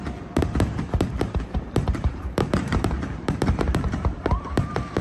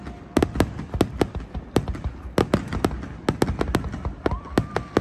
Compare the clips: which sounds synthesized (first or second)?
first